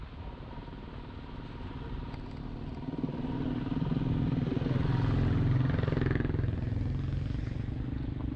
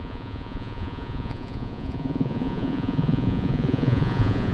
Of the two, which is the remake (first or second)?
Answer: second